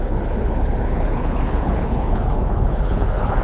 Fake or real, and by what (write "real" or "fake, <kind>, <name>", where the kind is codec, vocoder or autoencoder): fake, codec, HILCodec